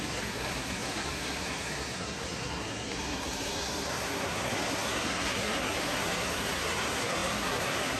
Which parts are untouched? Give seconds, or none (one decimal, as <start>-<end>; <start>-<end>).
none